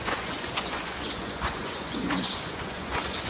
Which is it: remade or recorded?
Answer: remade